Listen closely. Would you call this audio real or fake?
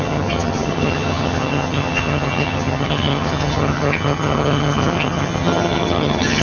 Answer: fake